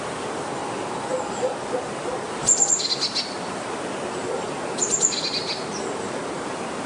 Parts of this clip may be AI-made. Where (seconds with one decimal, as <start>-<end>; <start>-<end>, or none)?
none